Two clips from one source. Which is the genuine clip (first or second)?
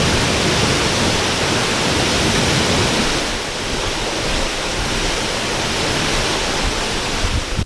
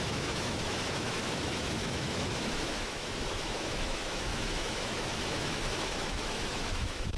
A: first